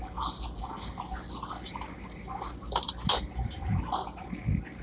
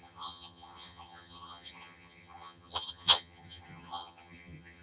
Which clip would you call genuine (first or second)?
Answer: first